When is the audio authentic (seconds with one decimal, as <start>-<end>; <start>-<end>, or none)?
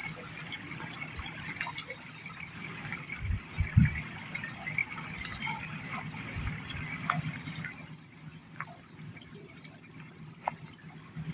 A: 0.0-11.3